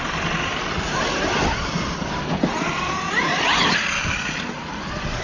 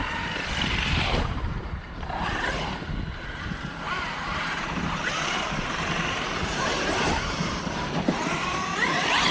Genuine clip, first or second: first